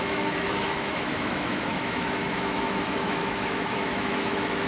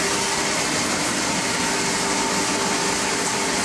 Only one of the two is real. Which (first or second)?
second